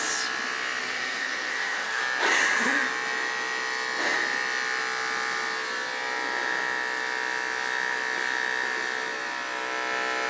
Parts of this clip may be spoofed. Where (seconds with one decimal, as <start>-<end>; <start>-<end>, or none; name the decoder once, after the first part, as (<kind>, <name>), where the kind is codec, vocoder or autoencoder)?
0.8-2.0 (codec, SNAC)